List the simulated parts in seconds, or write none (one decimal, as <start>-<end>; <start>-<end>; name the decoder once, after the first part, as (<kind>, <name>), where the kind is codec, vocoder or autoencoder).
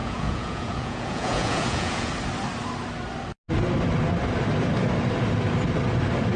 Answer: 0.0-2.1 (vocoder, Vocos)